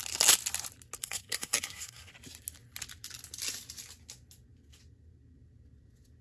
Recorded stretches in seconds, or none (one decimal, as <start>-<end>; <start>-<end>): 0.0-1.0; 2.1-6.2